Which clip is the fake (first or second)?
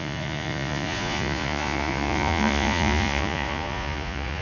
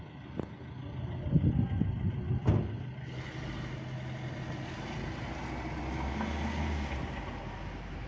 first